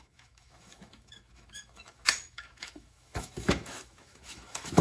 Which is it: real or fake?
fake